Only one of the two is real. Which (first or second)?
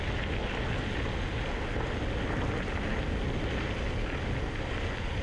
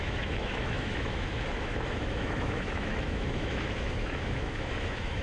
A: first